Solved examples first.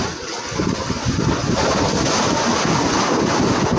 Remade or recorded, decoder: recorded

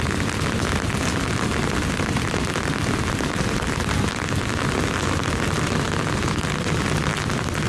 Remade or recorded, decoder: recorded